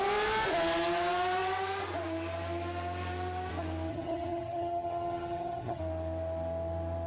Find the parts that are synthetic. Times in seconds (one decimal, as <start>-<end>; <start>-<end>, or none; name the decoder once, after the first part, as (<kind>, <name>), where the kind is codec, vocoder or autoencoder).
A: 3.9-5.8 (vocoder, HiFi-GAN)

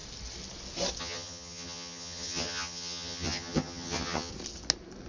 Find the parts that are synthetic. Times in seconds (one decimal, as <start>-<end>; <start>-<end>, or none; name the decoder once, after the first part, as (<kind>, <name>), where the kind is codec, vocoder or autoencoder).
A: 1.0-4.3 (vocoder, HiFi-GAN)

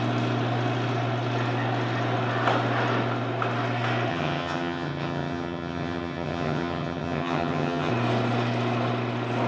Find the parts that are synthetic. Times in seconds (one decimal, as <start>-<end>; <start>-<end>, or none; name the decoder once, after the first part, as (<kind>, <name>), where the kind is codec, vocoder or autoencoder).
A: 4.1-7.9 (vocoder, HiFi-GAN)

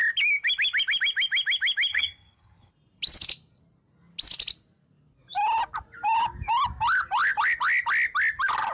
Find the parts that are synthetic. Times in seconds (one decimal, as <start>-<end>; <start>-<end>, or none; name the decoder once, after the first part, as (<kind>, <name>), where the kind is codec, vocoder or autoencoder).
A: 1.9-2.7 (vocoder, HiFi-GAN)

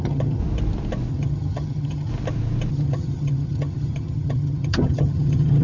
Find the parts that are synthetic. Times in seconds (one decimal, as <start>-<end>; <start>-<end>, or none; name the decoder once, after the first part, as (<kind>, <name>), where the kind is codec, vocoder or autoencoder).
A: 0.0-0.4 (vocoder, HiFi-GAN); 1.1-2.1; 2.7-5.6